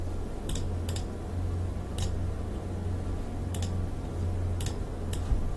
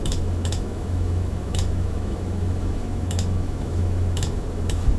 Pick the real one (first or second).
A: first